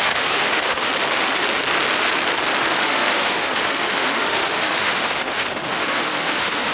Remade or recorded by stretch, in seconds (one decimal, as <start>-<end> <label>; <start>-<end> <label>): 0.0-0.9 remade; 0.9-2.6 recorded; 2.6-6.7 remade